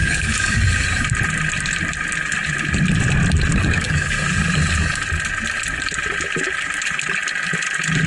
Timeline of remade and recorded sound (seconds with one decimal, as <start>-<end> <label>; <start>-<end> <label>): 0.0-0.7 remade; 0.7-3.5 recorded; 3.5-4.4 remade; 4.4-8.1 recorded

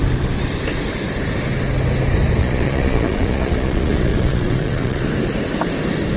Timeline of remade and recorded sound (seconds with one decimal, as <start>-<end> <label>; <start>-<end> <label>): 0.0-2.4 recorded; 2.4-5.0 remade; 5.0-6.2 recorded

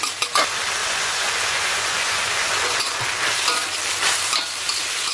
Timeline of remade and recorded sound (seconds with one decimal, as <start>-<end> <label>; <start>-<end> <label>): 0.0-0.8 recorded; 0.8-3.0 remade; 3.0-5.1 recorded